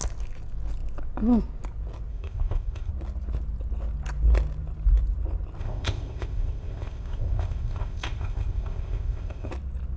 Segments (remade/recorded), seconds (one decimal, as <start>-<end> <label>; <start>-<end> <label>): 0.0-2.1 recorded; 2.1-2.9 remade; 2.9-5.6 recorded; 5.6-9.5 remade; 9.5-10.0 recorded